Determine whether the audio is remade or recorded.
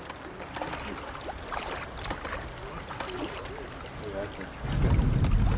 recorded